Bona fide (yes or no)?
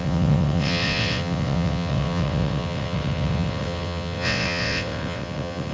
no